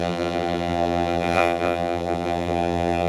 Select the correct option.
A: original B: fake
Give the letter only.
B